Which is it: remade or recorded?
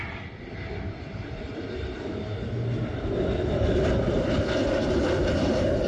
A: recorded